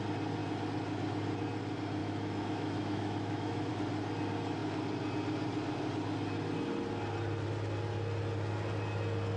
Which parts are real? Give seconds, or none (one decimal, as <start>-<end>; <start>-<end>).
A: 0.0-2.0; 3.7-9.4